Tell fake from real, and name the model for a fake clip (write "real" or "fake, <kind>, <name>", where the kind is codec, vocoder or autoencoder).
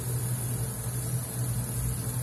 real